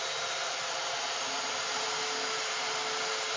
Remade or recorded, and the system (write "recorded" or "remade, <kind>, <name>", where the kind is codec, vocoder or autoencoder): recorded